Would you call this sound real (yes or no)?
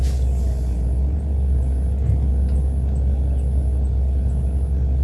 yes